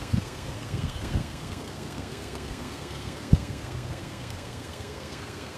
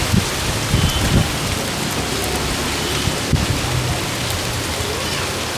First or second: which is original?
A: second